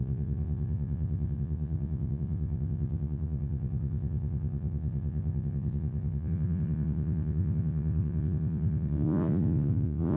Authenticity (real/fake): fake